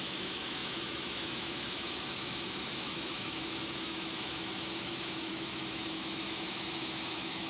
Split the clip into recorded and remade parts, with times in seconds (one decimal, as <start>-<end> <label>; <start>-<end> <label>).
0.0-7.5 remade

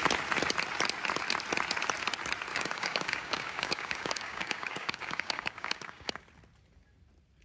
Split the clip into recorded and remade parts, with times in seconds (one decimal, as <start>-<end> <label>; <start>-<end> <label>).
0.0-2.5 recorded; 2.5-6.2 remade; 6.2-7.4 recorded